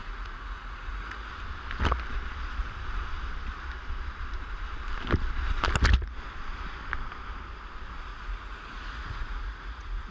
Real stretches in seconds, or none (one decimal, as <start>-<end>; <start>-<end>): 1.3-8.1